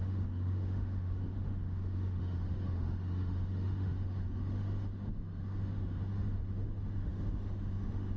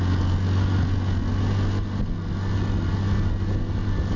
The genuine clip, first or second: second